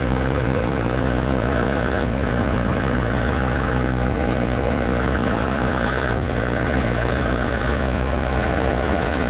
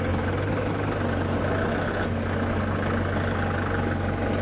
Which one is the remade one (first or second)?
first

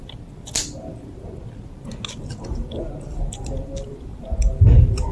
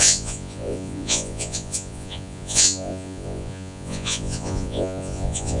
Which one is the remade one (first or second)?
second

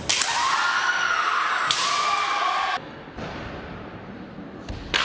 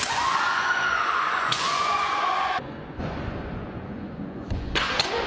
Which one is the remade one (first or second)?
second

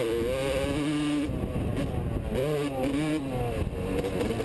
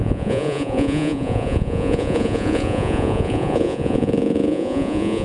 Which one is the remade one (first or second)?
second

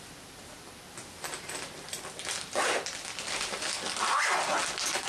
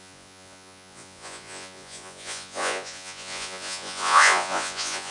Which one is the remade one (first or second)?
second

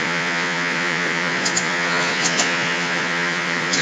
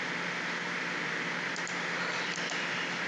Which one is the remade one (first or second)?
first